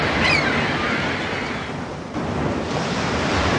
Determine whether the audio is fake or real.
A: real